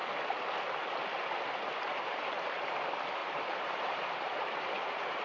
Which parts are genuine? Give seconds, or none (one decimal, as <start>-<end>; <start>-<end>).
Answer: 0.0-1.8